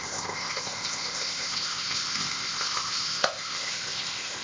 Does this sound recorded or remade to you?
remade